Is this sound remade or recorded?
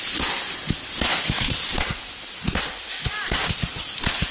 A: recorded